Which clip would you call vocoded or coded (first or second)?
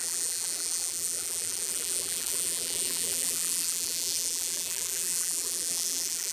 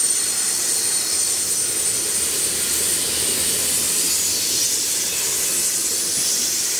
first